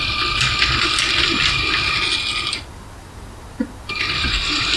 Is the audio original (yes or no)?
no